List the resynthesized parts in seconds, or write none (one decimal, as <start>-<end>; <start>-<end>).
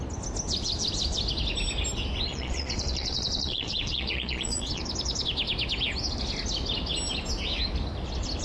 2.3-4.8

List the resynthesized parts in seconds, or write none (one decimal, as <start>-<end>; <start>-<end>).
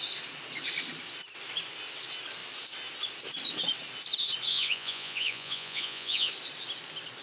4.5-6.3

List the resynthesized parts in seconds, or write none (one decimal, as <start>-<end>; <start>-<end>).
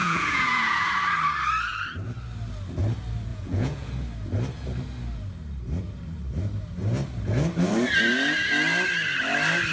0.0-0.9; 3.3-3.9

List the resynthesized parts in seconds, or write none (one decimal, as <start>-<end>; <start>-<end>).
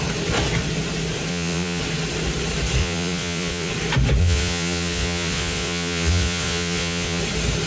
1.3-1.8; 2.8-3.7; 4.2-7.2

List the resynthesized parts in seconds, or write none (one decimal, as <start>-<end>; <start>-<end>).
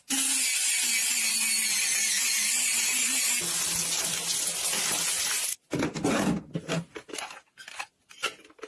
none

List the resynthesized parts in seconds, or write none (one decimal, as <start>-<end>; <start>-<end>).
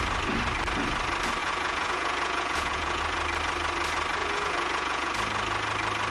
1.4-3.0; 4.2-5.1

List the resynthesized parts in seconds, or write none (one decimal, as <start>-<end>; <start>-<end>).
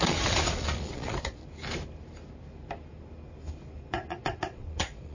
0.0-1.4; 4.2-5.1